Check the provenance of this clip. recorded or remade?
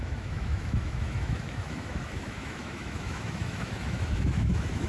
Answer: remade